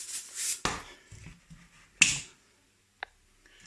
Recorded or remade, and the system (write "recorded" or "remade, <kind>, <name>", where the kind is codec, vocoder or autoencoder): recorded